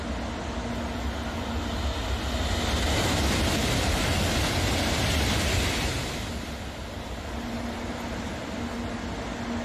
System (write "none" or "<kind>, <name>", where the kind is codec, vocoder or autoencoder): none